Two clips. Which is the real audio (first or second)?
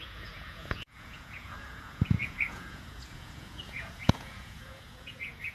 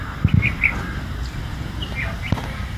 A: second